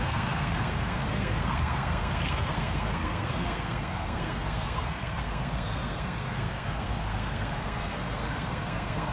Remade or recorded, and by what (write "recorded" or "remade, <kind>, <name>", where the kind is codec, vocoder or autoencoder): remade, codec, SNAC